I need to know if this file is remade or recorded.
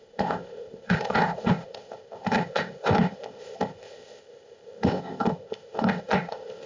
remade